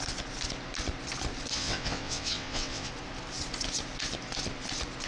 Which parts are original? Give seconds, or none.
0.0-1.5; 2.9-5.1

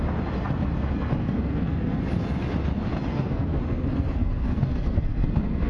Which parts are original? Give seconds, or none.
0.0-1.2; 2.0-3.1